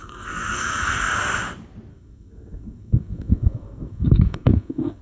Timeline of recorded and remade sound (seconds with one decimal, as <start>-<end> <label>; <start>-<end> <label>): 0.0-1.1 remade; 1.1-1.9 recorded; 1.9-5.0 remade